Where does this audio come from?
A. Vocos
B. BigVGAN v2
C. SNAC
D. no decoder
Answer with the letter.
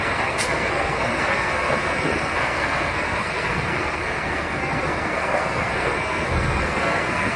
C